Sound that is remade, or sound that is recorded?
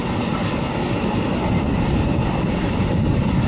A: recorded